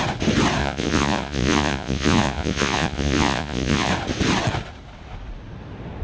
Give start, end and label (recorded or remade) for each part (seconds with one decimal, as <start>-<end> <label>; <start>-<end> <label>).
0.0-0.6 recorded; 0.6-3.9 remade; 3.9-6.0 recorded